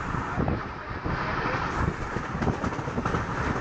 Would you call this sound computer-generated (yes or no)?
no